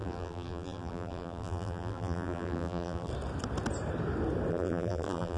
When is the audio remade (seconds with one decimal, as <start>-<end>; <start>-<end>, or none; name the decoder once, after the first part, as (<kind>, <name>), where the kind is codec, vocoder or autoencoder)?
0.0-3.1 (vocoder, BigVGAN v2); 4.5-5.4

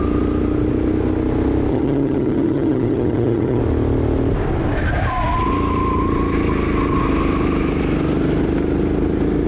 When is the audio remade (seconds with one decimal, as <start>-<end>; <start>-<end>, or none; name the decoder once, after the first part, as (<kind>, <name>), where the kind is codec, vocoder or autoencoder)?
1.7-3.6 (vocoder, HiFi-GAN)